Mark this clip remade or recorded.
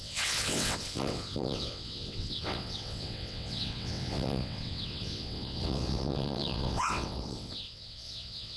remade